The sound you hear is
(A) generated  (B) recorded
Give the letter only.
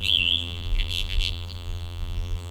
A